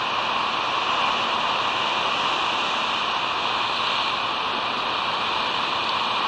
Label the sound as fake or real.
fake